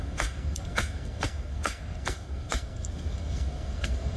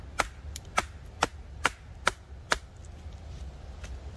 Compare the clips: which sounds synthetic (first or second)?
first